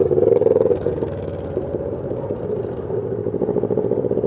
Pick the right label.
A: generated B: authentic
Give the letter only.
B